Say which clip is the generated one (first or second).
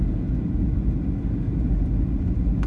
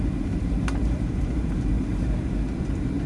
second